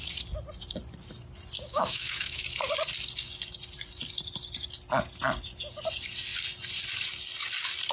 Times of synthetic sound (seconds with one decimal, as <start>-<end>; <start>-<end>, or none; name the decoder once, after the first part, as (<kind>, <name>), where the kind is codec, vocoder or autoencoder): 1.7-2.4 (autoencoder, DAC-VAE)